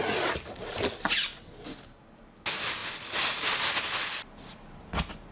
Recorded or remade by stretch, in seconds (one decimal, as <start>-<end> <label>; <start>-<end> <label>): 0.0-5.3 recorded